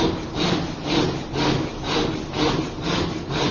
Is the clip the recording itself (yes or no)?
yes